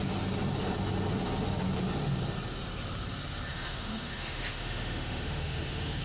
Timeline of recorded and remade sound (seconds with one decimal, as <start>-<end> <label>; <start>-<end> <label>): 0.0-3.5 recorded; 3.5-6.0 remade